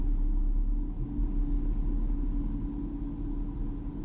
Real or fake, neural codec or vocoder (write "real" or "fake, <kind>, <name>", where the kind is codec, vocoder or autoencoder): real